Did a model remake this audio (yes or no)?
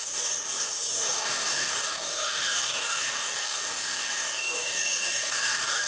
yes